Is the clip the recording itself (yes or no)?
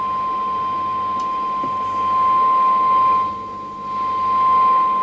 yes